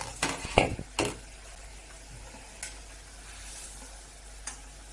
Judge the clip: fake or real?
real